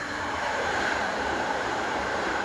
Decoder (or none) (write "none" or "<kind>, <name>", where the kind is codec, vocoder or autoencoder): vocoder, BigVGAN v2